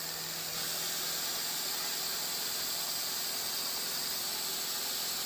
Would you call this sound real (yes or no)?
yes